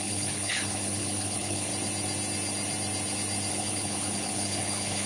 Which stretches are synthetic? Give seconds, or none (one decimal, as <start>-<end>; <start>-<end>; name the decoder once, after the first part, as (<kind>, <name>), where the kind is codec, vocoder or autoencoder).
0.0-1.7 (codec, HILCodec); 3.5-5.1